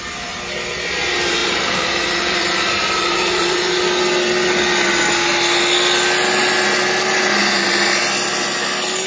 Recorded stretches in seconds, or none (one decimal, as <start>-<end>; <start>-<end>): 0.0-1.4; 3.8-7.4; 8.0-9.1